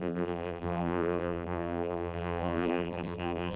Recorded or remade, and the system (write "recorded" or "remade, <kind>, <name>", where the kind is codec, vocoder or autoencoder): remade, vocoder, BigVGAN v2